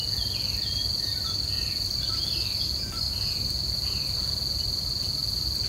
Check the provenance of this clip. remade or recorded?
recorded